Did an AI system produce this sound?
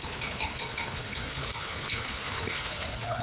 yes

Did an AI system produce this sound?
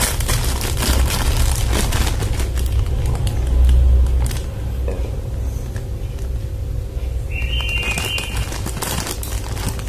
no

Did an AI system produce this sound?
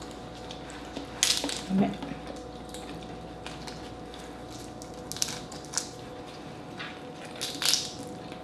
no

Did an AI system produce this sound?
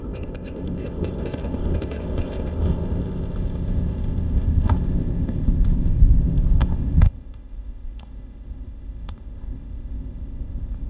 yes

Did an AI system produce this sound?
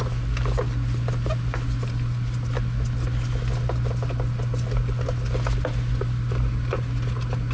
no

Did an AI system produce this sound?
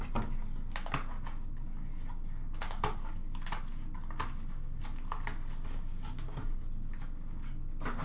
no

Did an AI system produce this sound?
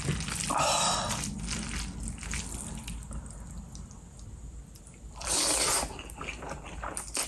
no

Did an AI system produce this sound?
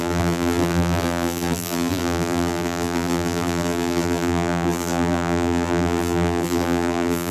yes